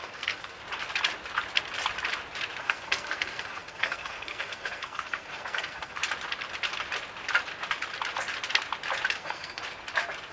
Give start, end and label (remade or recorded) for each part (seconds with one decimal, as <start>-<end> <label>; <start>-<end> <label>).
0.0-0.6 remade; 0.6-2.6 recorded; 2.6-6.0 remade; 6.0-9.1 recorded; 9.1-9.6 remade; 9.6-10.3 recorded